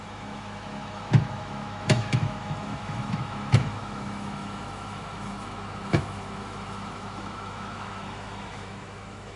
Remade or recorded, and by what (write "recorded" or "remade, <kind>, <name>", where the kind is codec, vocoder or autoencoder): remade, autoencoder, DAC-VAE